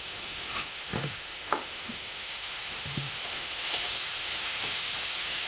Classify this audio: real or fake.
fake